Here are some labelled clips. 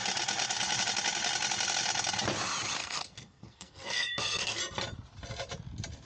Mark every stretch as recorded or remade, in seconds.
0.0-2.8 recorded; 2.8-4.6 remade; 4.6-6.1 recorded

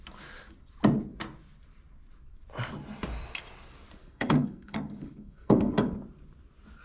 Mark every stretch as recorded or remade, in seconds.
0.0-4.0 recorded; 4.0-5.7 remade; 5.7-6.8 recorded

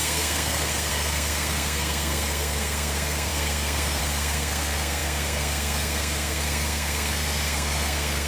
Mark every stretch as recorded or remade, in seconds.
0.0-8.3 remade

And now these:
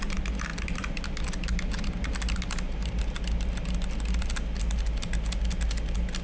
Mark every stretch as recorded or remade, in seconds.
0.0-6.2 recorded

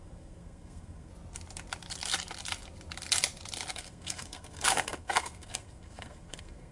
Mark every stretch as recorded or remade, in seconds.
0.0-1.1 remade; 1.1-3.7 recorded; 3.7-6.7 remade

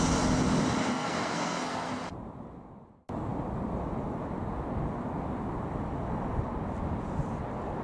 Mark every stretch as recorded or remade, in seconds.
0.0-0.9 recorded; 0.9-1.9 remade; 1.9-7.8 recorded

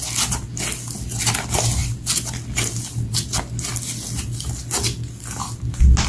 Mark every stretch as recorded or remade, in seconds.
0.0-6.1 recorded